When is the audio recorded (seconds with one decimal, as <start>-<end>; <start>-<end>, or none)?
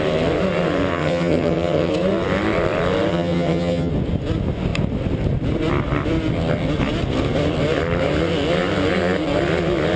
0.0-0.9; 1.9-3.1; 3.9-10.0